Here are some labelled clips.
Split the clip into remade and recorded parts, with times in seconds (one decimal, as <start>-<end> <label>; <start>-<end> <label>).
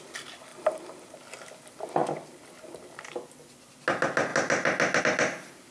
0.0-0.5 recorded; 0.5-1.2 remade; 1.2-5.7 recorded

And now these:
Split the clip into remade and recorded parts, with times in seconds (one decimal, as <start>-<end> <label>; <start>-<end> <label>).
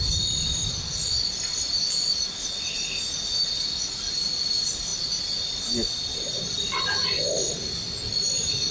0.0-8.7 recorded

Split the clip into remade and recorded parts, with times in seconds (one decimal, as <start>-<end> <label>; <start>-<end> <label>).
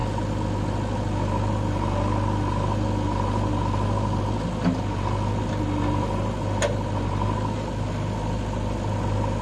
0.0-9.4 recorded